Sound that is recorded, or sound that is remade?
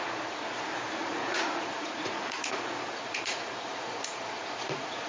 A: remade